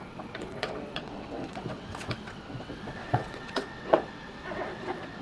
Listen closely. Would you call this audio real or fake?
fake